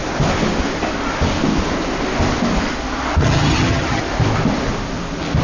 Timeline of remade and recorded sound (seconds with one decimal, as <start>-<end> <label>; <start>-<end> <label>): 0.0-3.2 recorded; 3.2-4.0 remade; 4.0-5.4 recorded